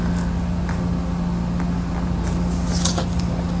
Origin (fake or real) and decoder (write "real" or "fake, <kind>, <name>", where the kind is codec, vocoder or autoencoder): real